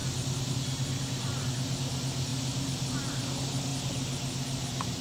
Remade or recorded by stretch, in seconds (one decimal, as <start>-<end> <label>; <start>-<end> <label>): 0.0-5.0 recorded